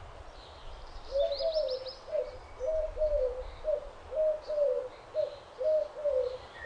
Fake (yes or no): no